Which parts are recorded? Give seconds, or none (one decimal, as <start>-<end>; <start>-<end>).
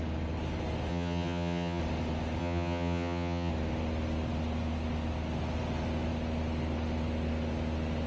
0.0-0.9; 1.8-2.4; 3.5-8.1